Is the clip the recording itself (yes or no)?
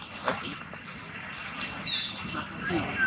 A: yes